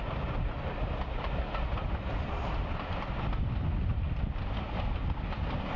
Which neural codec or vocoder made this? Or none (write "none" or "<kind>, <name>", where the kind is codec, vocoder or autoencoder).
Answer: none